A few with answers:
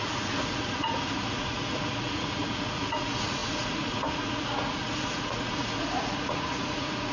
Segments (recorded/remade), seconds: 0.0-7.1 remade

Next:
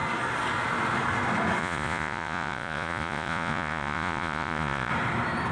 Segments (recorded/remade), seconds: 0.0-1.6 recorded; 1.6-4.9 remade; 4.9-5.5 recorded

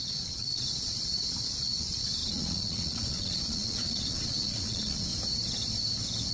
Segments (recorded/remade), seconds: 0.0-5.1 remade; 5.1-6.3 recorded

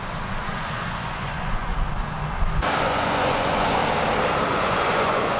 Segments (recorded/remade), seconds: 0.0-1.7 remade; 1.7-2.8 recorded; 2.8-3.8 remade; 3.8-4.5 recorded; 4.5-5.4 remade

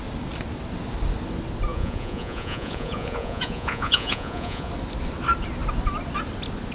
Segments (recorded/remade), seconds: 0.0-1.7 recorded; 1.7-4.7 remade; 4.7-6.7 recorded

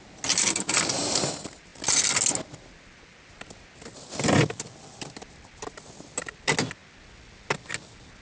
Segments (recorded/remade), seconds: 0.0-8.2 recorded

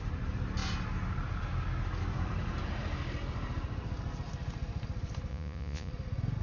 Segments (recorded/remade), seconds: 0.0-5.3 recorded; 5.3-5.9 remade; 5.9-6.4 recorded